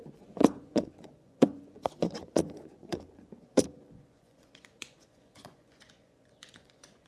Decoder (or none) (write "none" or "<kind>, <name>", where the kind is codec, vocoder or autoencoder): vocoder, Vocos